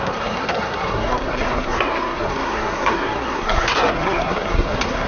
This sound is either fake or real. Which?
fake